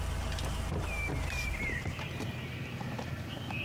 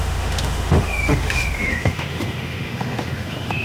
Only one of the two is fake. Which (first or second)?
second